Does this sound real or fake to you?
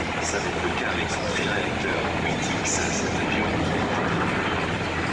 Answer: real